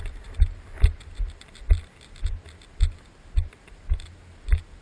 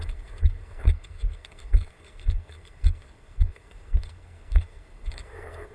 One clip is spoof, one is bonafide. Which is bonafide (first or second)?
first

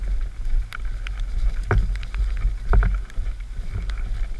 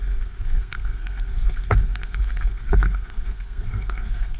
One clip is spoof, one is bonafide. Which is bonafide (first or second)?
first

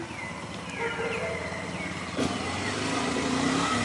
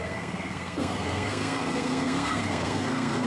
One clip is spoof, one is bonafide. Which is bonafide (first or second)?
first